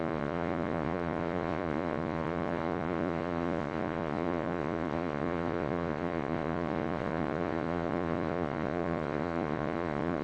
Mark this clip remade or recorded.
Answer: remade